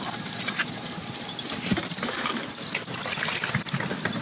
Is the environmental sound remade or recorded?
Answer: recorded